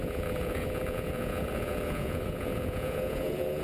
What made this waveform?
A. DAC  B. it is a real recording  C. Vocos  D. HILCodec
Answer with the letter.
C